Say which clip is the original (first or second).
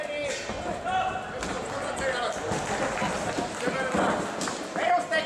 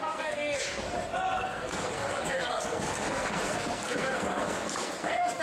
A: first